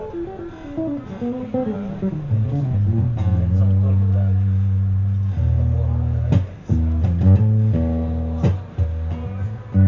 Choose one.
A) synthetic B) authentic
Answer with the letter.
B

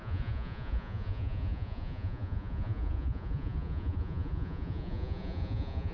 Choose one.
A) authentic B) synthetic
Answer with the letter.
B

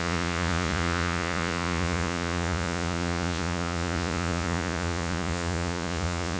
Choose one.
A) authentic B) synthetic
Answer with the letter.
B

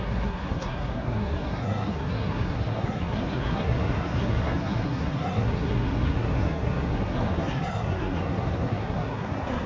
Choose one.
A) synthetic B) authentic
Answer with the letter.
A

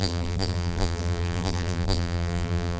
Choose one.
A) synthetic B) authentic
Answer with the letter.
A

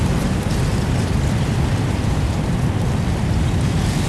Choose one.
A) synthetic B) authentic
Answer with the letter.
B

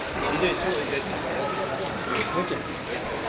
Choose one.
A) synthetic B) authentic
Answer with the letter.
B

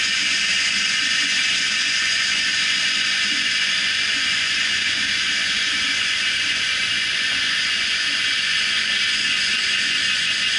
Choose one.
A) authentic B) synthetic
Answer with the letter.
B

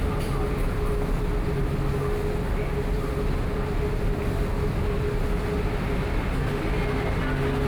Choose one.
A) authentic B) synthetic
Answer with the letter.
A